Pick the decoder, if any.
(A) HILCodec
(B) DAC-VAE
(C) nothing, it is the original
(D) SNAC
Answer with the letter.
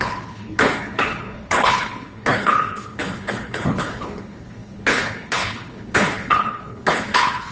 A